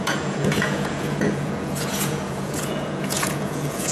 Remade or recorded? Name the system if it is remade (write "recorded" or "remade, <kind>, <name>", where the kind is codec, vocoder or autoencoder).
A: remade, vocoder, Vocos